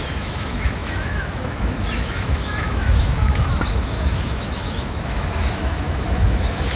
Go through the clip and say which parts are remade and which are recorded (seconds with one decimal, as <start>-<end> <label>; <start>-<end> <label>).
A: 0.0-6.8 remade